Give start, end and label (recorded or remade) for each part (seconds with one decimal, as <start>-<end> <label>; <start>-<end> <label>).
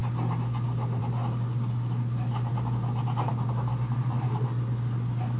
0.0-5.4 recorded